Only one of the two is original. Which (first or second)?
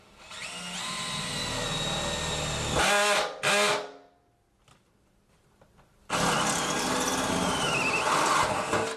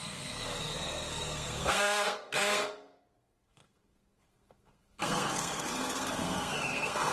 first